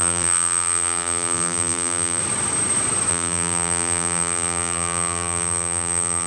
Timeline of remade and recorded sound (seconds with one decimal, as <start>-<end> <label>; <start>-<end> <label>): 0.0-2.2 remade; 2.2-3.1 recorded; 3.1-6.3 remade